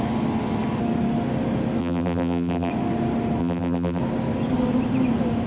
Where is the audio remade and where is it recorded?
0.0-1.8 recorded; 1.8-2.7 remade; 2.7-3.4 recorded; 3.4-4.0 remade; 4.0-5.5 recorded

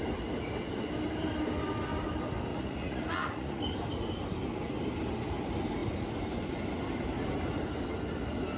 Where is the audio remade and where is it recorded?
0.0-2.5 recorded; 2.5-3.6 remade; 3.6-8.6 recorded

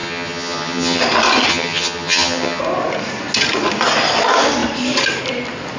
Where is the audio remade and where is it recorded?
0.0-1.0 remade; 1.0-1.5 recorded; 1.5-2.6 remade; 2.6-5.8 recorded

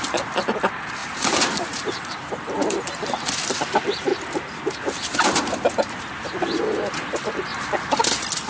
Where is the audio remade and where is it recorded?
0.0-1.0 recorded; 1.0-2.3 remade; 2.3-4.1 recorded; 4.1-6.0 remade; 6.0-8.5 recorded

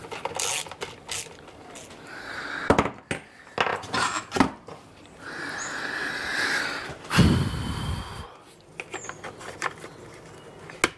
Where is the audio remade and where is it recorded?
0.0-3.7 recorded; 3.7-5.2 remade; 5.2-11.0 recorded

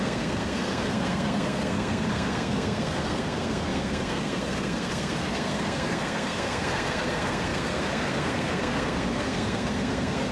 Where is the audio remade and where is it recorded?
0.0-10.3 remade